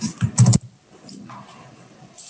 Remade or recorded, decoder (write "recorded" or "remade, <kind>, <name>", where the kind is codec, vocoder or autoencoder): remade, vocoder, BigVGAN v2